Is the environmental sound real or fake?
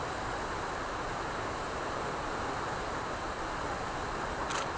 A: real